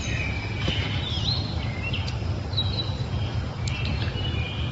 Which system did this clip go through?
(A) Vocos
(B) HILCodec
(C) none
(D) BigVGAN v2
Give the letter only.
D